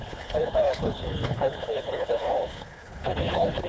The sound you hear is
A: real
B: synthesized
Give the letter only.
B